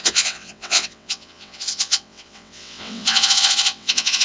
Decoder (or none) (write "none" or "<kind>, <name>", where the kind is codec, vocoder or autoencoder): vocoder, WaveNeXt